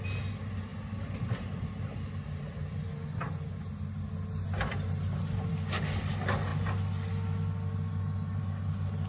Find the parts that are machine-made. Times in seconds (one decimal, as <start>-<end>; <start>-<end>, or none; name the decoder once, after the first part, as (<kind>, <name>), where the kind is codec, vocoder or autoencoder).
none